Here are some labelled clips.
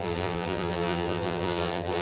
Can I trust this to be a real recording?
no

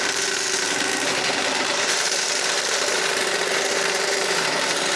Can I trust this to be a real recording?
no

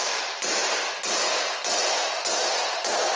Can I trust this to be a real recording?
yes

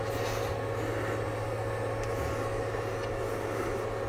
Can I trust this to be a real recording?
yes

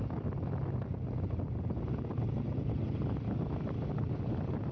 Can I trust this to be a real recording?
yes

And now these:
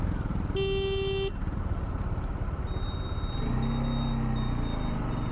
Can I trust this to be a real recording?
yes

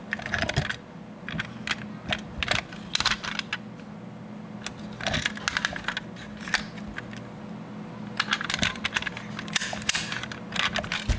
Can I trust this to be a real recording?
yes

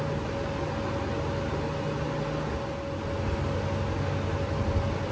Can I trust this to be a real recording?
yes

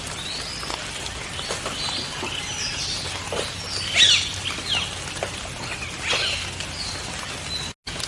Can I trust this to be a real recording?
yes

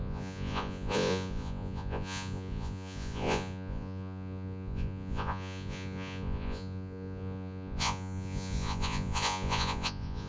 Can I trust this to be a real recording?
no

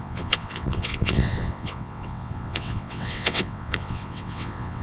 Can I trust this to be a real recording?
no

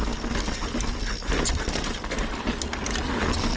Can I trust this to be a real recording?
yes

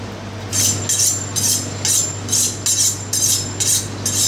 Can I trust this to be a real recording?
yes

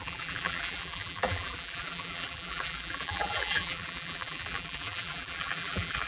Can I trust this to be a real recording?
no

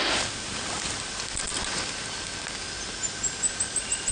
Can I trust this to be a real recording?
yes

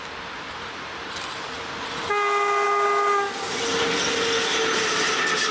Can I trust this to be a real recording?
yes